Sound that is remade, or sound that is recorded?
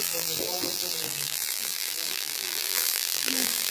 remade